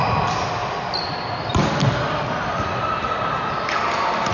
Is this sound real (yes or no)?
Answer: yes